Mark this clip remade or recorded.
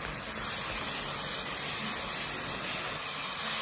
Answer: recorded